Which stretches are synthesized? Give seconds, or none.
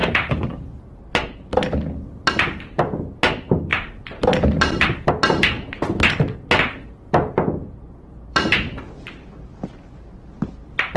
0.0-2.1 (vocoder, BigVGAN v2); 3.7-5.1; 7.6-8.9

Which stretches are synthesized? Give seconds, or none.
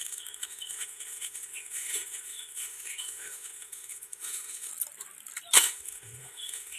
0.0-4.7 (autoencoder, DAC-VAE); 5.6-6.8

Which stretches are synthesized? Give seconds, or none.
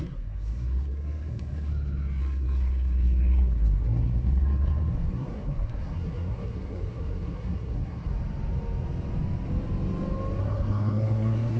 0.0-1.7 (codec, SNAC); 2.2-8.1; 10.4-11.6